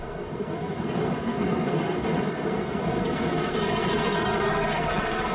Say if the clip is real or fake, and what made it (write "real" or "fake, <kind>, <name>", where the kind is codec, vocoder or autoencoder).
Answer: fake, codec, SNAC